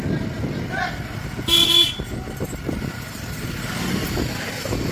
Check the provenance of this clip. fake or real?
real